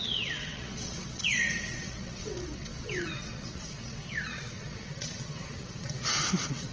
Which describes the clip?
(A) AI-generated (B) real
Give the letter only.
A